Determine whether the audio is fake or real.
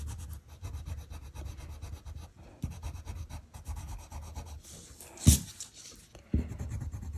real